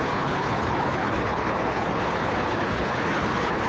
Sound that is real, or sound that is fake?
fake